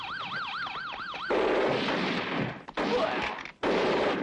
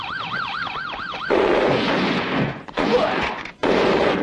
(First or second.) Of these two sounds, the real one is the first